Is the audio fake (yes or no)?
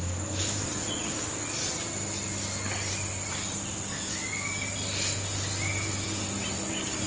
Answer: no